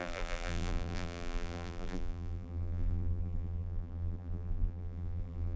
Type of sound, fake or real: fake